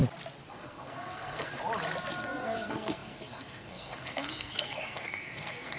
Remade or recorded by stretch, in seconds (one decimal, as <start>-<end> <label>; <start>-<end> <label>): 0.0-0.5 recorded; 0.5-1.5 remade; 1.5-2.2 recorded; 2.2-5.8 remade